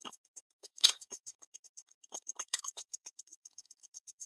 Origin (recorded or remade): remade